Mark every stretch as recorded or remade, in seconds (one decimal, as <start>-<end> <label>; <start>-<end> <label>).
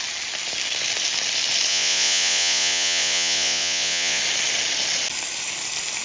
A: 0.0-1.7 recorded; 1.7-4.2 remade; 4.2-6.0 recorded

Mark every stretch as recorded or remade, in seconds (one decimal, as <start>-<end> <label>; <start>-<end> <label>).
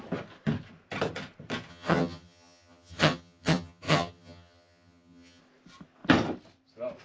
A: 0.0-1.7 recorded; 1.7-5.4 remade; 5.4-7.0 recorded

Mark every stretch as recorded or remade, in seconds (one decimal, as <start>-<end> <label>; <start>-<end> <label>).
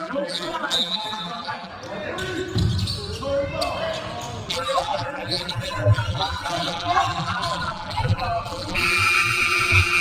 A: 0.0-1.7 remade; 1.7-4.5 recorded; 4.5-10.0 remade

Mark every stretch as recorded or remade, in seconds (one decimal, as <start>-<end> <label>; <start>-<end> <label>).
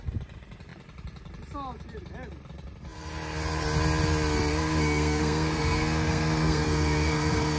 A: 0.0-4.5 recorded; 4.5-7.6 remade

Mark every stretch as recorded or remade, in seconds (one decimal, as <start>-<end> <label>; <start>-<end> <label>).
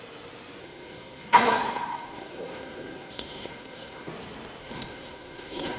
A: 0.0-0.6 recorded; 0.6-4.1 remade; 4.1-4.6 recorded; 4.6-5.8 remade